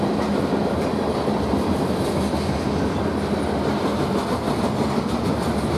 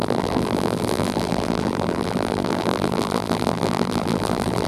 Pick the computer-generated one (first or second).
second